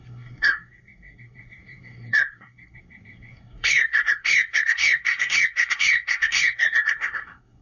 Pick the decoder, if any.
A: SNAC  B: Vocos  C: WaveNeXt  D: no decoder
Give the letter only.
A